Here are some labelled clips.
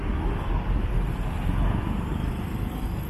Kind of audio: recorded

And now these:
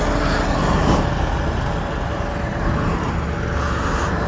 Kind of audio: recorded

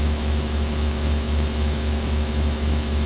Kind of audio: remade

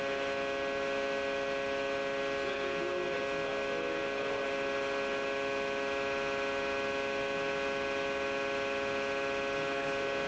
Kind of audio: recorded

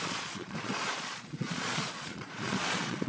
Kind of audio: remade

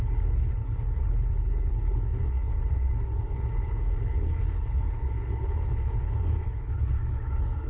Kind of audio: remade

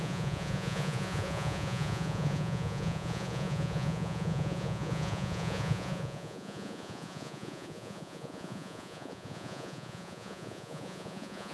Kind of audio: remade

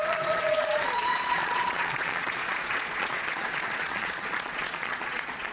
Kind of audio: remade